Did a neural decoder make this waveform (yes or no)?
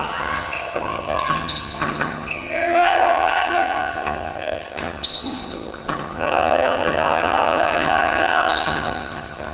yes